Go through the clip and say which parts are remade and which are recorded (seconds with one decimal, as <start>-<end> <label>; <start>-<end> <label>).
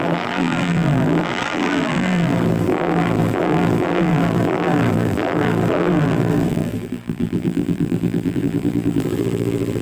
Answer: 0.0-9.8 remade